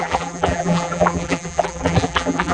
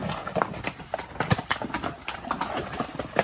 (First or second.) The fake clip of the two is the first